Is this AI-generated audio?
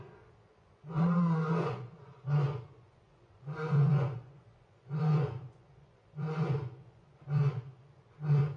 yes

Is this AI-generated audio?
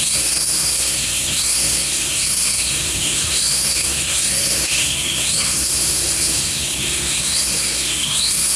yes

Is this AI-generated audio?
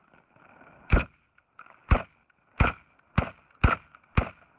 no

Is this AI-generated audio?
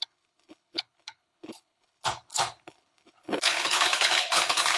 yes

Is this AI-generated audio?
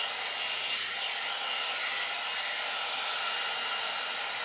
no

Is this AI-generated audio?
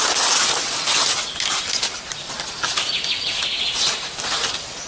no